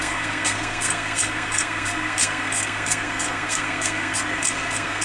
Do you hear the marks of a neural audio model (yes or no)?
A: yes